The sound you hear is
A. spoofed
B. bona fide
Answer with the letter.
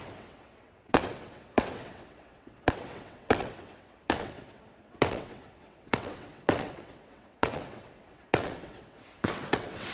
A